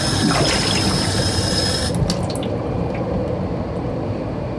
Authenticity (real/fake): real